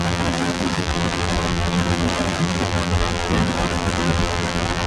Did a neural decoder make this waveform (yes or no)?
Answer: yes